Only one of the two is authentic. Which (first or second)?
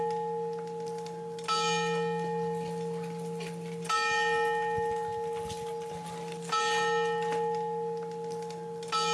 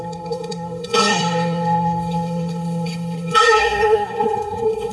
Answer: first